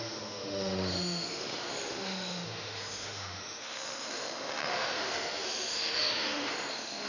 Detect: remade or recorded remade